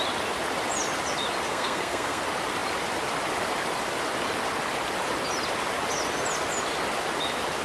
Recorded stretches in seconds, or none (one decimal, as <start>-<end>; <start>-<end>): 0.0-1.5; 2.2-7.6